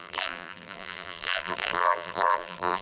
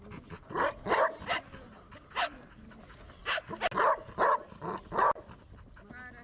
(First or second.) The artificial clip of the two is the first